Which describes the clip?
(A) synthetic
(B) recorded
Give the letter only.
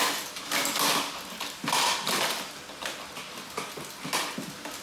B